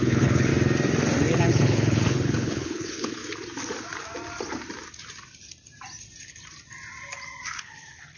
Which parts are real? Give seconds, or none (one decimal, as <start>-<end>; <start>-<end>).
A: 0.5-1.5; 3.2-7.6